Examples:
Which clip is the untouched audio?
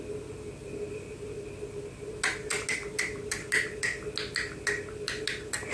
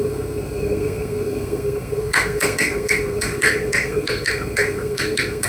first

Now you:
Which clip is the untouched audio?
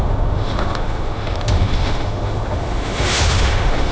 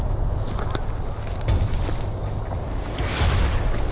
second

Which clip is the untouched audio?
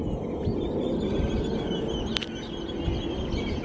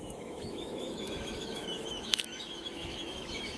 first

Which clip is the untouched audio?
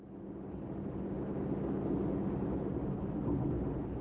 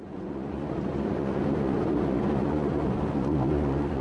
first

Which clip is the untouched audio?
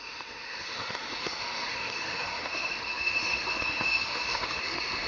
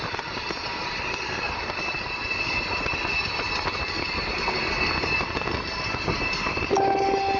second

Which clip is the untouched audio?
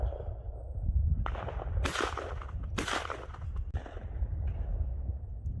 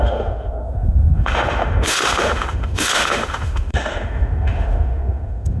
first